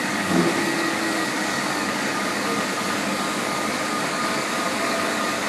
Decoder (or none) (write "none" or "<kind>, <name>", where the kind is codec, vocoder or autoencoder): codec, DAC